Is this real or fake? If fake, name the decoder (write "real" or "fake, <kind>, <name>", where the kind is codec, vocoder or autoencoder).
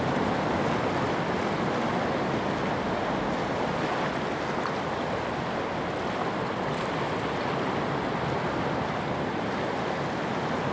real